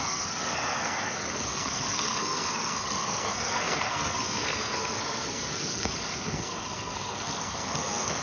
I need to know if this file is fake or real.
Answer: fake